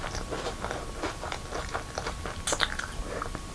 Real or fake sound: real